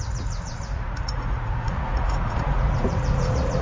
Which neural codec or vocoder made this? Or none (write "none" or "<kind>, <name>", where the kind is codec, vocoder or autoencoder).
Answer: vocoder, Vocos